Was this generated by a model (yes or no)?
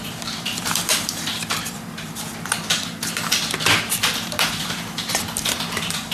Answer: yes